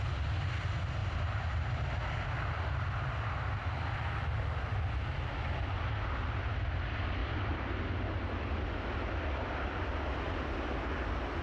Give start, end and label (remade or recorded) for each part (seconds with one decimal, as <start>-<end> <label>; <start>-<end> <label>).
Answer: 0.0-1.0 recorded; 1.0-1.9 remade; 1.9-7.2 recorded; 7.2-7.9 remade; 7.9-11.4 recorded